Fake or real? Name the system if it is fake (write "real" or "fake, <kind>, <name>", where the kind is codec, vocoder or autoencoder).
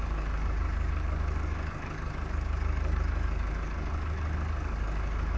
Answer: fake, codec, DAC